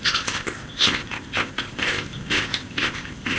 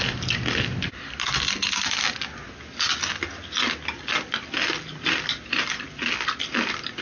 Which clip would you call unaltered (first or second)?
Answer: second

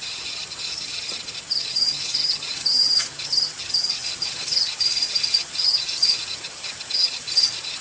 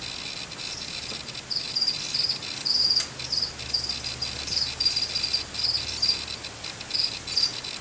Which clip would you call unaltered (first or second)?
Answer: second